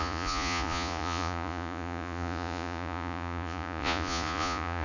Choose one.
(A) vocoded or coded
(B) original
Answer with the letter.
A